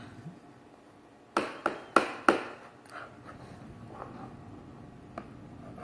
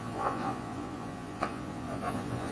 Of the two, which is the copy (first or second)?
second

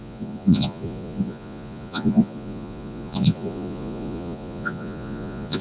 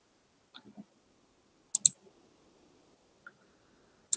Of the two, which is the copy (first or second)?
first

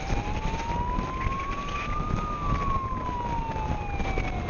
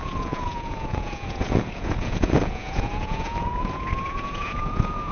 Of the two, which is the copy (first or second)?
second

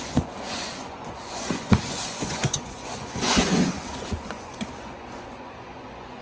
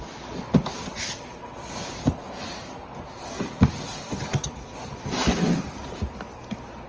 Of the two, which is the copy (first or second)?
first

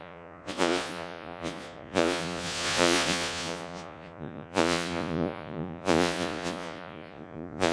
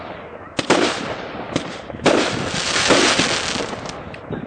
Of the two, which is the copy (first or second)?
first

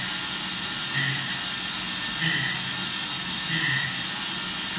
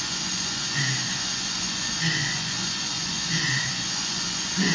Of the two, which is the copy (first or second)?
second